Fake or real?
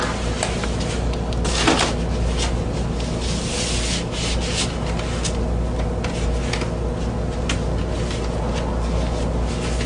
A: real